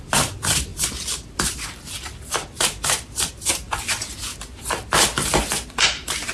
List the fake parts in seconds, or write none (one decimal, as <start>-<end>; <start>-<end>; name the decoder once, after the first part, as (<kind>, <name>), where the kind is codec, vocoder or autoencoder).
0.0-4.3 (vocoder, BigVGAN v2); 5.4-6.3